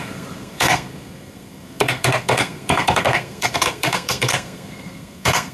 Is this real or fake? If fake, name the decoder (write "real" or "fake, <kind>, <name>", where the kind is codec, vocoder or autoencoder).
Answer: fake, codec, SNAC